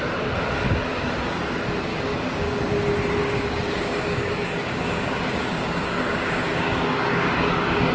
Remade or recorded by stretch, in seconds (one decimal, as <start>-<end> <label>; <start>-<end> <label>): 0.0-1.9 recorded; 1.9-2.6 remade; 2.6-3.2 recorded; 3.2-7.9 remade